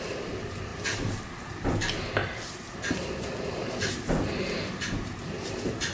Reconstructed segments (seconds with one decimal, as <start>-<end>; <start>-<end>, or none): none